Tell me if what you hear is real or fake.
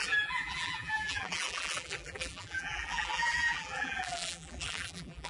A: fake